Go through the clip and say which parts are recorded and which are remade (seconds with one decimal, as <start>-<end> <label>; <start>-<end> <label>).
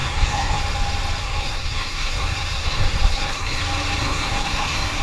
0.0-0.6 remade; 0.6-1.2 recorded; 1.2-3.6 remade; 3.6-4.0 recorded; 4.0-5.0 remade